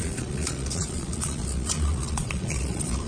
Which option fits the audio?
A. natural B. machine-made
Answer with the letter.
B